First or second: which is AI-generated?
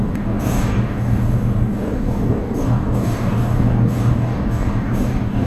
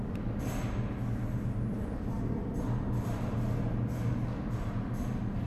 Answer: first